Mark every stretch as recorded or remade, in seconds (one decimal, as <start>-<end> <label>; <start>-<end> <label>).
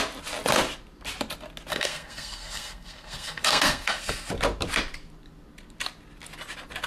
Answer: 0.0-1.7 recorded; 1.7-4.3 remade; 4.3-6.9 recorded